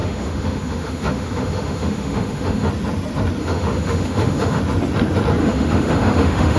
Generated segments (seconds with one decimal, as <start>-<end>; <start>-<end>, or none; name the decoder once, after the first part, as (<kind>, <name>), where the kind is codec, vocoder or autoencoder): 0.0-2.7 (autoencoder, DAC-VAE); 3.4-4.6; 5.4-6.6